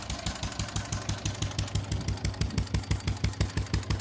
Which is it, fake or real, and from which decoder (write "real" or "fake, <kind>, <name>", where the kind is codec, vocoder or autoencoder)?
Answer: real